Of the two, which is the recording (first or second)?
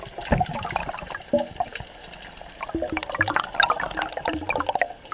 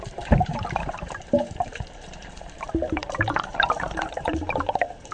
first